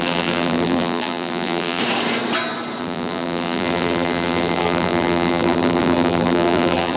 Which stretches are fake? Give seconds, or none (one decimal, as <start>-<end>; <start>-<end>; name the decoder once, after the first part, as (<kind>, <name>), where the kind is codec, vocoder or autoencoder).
0.0-1.8 (vocoder, BigVGAN v2); 2.8-7.0